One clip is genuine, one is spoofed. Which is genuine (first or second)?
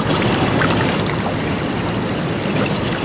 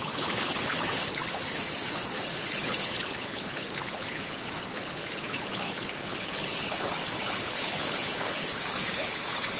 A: first